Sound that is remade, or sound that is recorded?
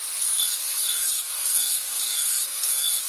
remade